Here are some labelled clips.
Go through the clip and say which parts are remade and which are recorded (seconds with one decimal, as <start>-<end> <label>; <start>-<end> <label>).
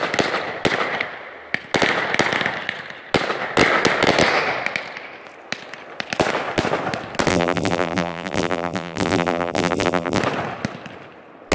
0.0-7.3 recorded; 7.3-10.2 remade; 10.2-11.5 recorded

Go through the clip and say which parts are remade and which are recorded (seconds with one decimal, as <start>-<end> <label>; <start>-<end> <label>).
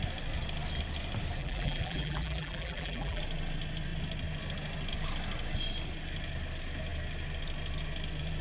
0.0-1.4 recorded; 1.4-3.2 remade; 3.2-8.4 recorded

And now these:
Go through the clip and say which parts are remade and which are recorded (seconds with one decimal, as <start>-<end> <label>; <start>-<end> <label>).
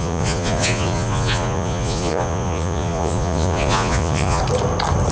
0.0-4.4 remade; 4.4-5.1 recorded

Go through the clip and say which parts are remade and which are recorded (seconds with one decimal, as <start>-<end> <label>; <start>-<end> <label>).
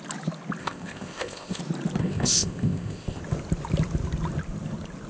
0.0-0.6 recorded; 0.6-1.6 remade; 1.6-2.0 recorded; 2.0-3.2 remade; 3.2-5.1 recorded